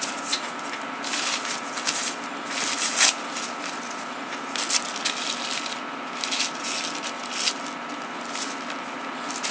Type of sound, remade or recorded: recorded